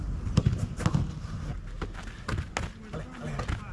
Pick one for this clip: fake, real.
real